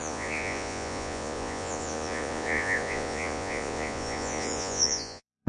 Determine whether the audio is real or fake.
fake